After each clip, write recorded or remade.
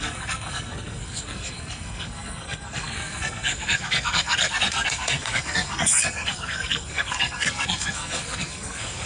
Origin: remade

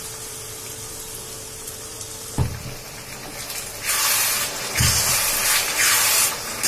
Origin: recorded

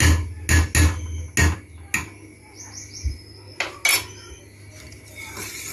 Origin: recorded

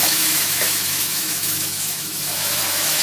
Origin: remade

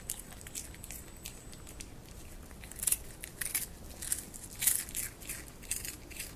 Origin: recorded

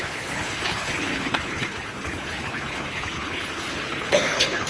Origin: remade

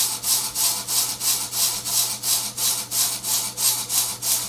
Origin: recorded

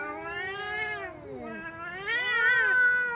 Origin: recorded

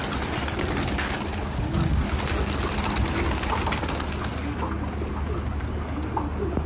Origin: recorded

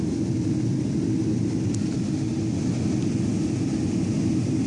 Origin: recorded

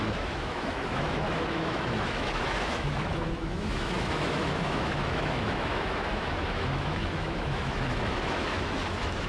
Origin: remade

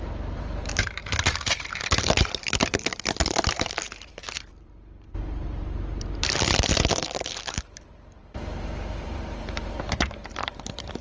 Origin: remade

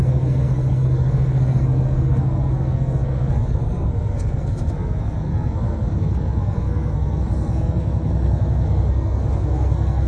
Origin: remade